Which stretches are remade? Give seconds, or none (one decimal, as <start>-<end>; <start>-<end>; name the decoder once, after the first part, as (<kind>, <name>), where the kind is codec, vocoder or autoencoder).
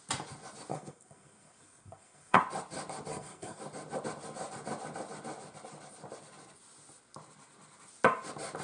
0.7-2.4 (codec, SNAC); 3.1-3.6